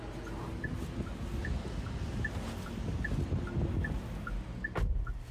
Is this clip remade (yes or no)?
no